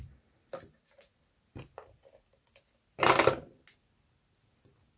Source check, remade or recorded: recorded